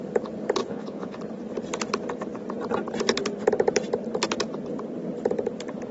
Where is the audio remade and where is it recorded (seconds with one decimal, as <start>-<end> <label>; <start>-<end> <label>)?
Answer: 0.0-0.6 recorded; 0.6-1.2 remade; 1.2-5.9 recorded